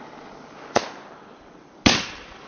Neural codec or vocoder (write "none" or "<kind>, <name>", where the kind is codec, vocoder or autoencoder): none